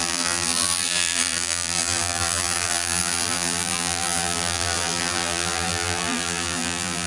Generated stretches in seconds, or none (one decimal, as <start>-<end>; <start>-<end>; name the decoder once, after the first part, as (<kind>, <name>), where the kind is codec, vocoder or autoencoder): 0.0-7.1 (vocoder, BigVGAN v2)